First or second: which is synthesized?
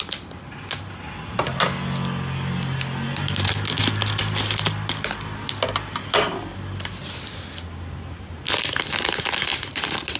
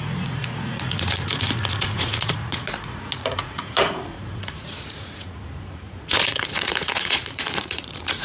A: second